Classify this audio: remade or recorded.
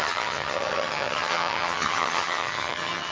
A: remade